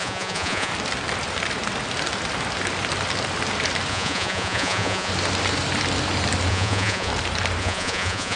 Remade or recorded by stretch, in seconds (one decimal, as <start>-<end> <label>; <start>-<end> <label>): 0.0-0.7 remade; 0.7-3.9 recorded; 3.9-5.1 remade; 5.1-6.5 recorded; 6.5-7.1 remade; 7.1-7.6 recorded; 7.6-8.4 remade